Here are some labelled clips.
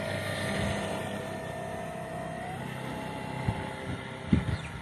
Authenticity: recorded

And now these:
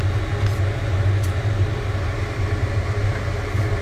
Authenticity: recorded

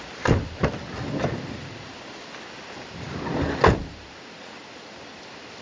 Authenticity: remade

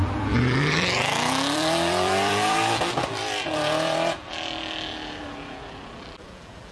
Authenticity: remade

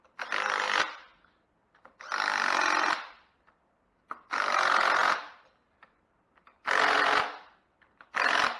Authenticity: recorded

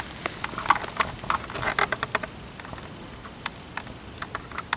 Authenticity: recorded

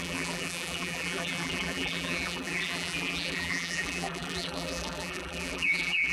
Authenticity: remade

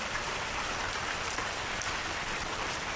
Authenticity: remade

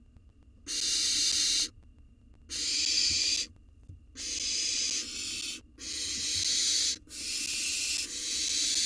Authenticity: recorded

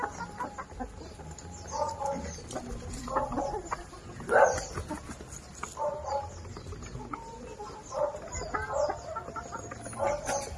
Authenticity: recorded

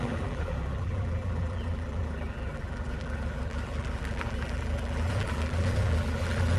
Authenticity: remade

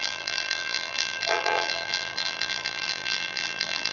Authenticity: remade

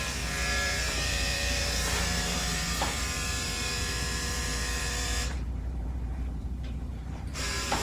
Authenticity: remade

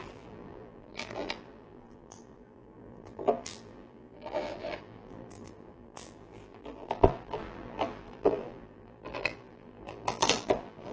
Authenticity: remade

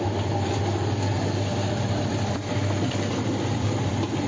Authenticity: remade